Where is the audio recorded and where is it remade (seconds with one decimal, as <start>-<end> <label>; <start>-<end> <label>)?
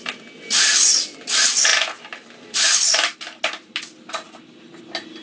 0.0-5.2 recorded